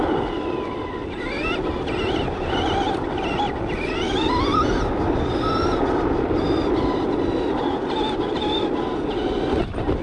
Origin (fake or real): real